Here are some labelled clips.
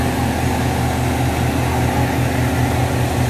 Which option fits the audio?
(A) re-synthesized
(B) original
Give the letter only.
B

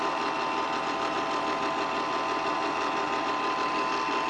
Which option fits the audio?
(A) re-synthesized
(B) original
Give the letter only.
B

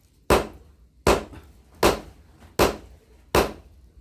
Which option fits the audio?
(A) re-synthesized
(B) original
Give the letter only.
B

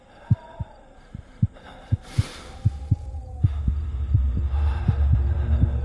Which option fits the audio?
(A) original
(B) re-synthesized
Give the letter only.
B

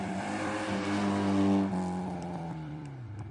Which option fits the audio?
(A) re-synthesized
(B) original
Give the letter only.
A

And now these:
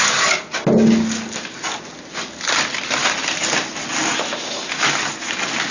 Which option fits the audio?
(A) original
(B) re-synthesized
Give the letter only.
A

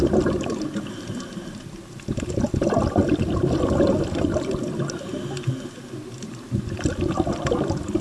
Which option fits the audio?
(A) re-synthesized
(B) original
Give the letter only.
B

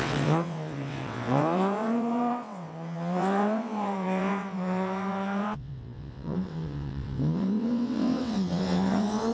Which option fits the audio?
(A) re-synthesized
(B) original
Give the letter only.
A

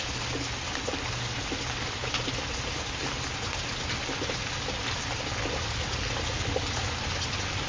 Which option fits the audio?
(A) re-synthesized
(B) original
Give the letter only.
B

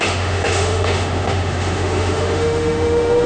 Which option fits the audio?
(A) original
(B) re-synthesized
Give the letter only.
B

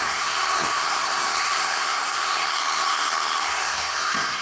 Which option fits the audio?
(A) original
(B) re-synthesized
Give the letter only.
B